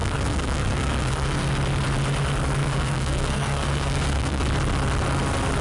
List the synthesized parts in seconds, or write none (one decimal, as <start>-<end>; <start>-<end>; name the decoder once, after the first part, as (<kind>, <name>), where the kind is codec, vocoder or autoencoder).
0.0-1.5 (codec, SNAC); 2.6-4.4